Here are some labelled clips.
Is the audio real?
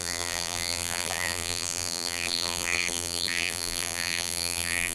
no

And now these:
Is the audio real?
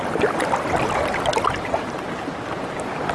no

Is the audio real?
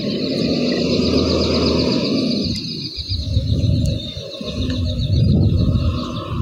yes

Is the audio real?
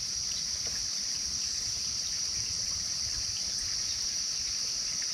no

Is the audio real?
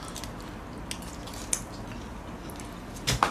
yes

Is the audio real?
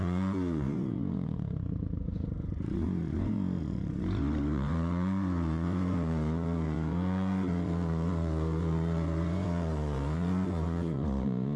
no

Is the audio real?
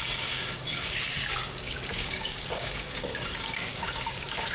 no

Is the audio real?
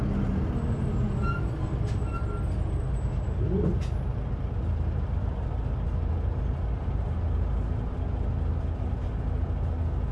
yes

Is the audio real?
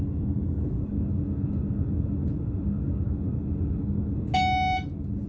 yes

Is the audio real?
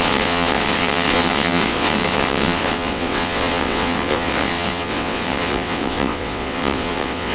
no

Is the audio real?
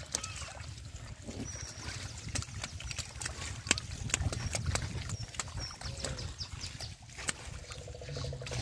yes